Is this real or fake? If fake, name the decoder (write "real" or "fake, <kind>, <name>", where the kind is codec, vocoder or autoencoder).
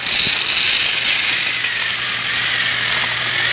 real